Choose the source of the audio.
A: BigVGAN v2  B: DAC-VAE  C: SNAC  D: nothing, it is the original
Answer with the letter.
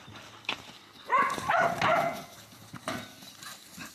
D